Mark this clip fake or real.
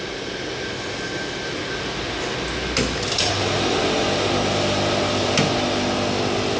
real